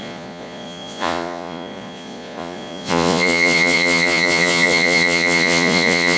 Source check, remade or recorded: remade